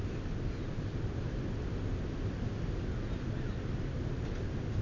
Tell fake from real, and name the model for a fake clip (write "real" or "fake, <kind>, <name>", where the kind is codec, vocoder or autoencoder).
real